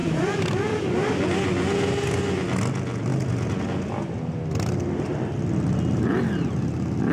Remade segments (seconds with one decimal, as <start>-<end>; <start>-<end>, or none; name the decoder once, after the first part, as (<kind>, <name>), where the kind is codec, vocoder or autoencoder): 0.0-1.1 (vocoder, BigVGAN v2)